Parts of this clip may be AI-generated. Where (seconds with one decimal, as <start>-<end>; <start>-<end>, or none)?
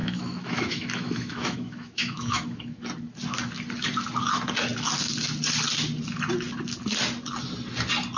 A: 0.0-2.8